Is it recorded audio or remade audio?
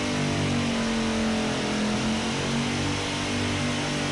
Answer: recorded